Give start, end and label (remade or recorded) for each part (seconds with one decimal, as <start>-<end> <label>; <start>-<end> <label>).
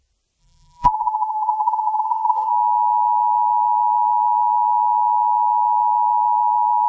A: 0.0-0.4 recorded; 0.4-2.5 remade; 2.5-6.9 recorded